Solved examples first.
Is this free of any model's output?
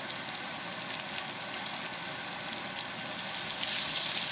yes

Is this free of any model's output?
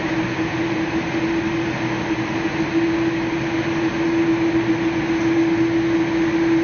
yes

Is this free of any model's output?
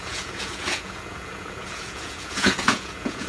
no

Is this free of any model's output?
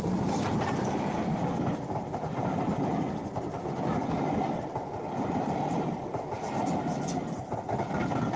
yes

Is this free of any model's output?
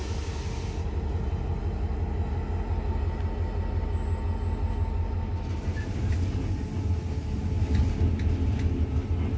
yes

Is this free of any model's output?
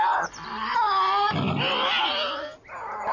yes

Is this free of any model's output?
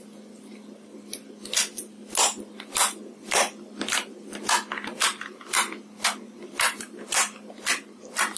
yes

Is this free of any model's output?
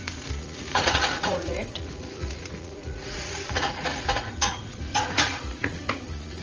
no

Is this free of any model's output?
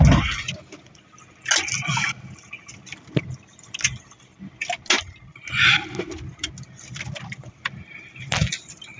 yes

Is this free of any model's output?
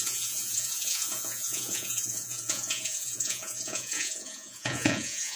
no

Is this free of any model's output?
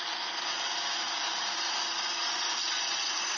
yes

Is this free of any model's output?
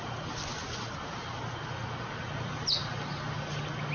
yes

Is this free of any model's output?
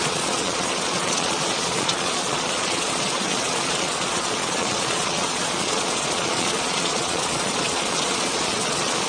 no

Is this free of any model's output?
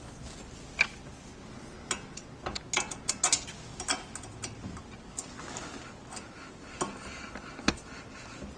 yes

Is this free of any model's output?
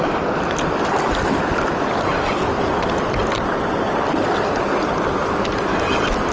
yes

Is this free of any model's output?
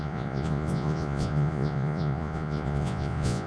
no